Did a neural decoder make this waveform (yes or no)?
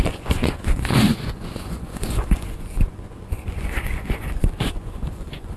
yes